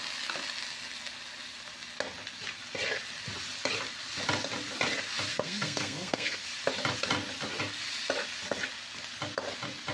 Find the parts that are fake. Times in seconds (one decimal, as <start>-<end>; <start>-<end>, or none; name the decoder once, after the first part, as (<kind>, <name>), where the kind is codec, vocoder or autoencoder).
5.3-6.4 (codec, SNAC)